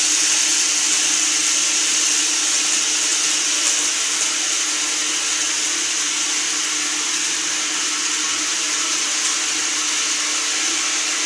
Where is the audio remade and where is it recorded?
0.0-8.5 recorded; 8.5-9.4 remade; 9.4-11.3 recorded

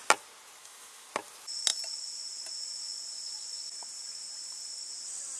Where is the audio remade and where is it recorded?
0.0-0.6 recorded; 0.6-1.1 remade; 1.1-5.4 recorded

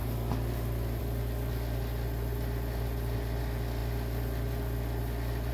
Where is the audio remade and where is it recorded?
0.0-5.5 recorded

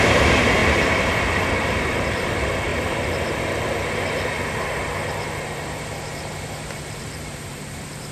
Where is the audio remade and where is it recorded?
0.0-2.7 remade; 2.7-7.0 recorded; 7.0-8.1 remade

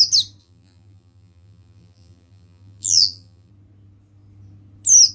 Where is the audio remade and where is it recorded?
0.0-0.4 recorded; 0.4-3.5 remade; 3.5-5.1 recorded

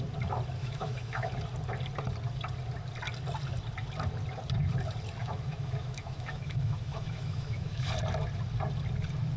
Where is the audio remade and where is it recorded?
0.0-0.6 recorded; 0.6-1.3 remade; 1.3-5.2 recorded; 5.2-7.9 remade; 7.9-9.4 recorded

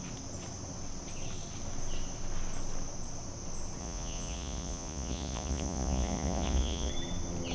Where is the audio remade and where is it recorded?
0.0-3.8 recorded; 3.8-6.9 remade; 6.9-7.5 recorded